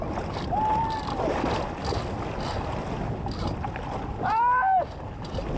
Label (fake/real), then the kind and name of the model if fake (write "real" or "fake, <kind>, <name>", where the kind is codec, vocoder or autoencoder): real